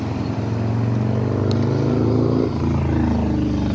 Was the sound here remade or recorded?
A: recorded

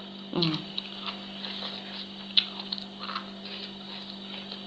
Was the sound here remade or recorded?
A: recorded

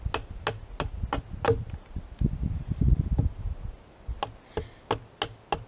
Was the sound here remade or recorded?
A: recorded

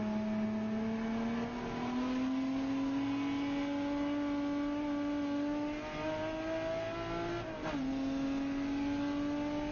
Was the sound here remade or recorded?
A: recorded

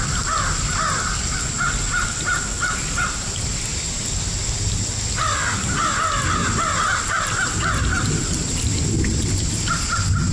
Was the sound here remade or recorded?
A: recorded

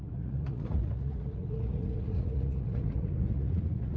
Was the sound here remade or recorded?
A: remade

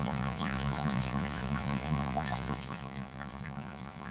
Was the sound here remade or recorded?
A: remade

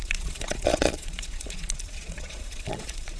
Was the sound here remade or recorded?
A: remade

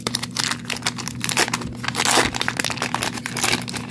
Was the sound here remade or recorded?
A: recorded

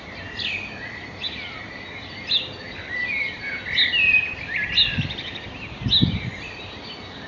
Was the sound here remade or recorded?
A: recorded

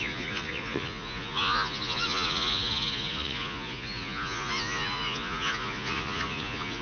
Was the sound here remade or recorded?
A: remade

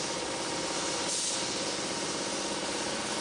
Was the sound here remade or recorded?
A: recorded